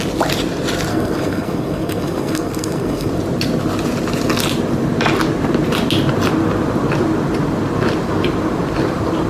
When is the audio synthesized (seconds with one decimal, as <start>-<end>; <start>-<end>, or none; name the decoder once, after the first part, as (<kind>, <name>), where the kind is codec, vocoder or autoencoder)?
0.9-3.1 (codec, SNAC)